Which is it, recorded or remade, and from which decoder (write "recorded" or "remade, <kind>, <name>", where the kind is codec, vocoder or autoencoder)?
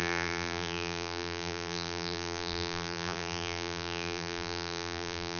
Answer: remade, vocoder, BigVGAN v2